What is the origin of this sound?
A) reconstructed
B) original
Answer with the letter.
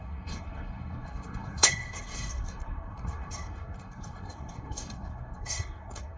A